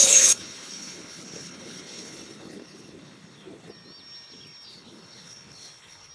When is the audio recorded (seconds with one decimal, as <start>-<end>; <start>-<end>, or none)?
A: 3.7-4.7